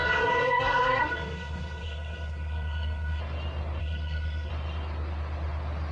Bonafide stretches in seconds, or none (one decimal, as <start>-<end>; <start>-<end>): 3.2-3.8; 4.5-5.9